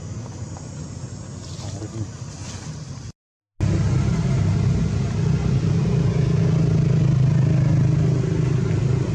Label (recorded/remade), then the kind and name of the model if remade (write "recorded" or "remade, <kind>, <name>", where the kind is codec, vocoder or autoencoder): recorded